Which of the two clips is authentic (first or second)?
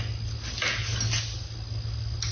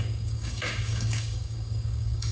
first